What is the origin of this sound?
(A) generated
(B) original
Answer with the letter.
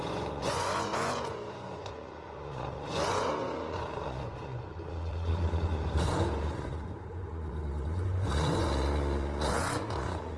A